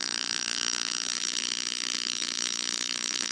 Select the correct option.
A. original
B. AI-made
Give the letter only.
B